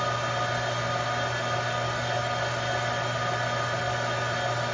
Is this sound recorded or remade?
recorded